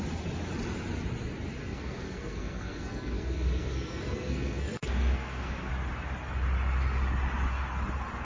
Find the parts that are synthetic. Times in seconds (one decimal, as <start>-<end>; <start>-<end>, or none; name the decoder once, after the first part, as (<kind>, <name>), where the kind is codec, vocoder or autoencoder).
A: 1.6-5.7 (codec, SNAC)